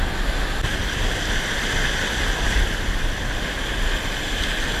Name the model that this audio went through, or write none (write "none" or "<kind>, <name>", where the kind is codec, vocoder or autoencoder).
none